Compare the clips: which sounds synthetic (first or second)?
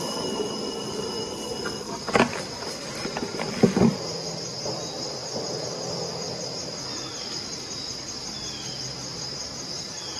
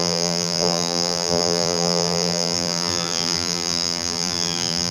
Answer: second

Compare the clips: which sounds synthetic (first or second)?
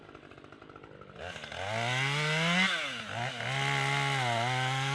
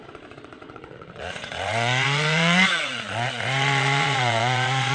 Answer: second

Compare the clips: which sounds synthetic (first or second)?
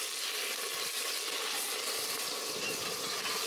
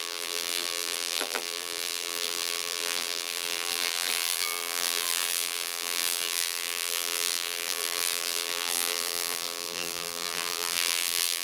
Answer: second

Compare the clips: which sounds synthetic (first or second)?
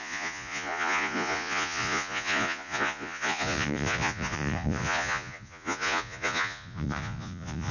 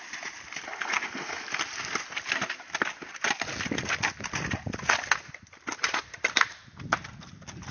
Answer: first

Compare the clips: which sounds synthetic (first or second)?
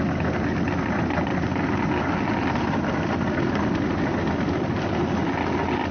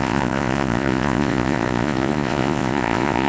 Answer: second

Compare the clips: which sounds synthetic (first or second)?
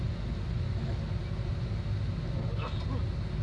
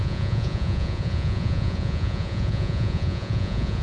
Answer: second